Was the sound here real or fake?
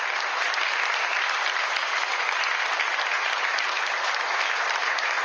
real